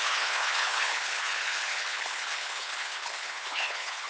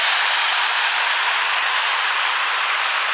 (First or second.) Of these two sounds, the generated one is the first